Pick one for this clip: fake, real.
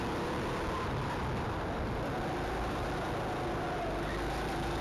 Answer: real